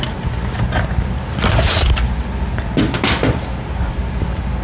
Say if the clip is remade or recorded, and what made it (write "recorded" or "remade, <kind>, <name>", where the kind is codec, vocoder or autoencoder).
recorded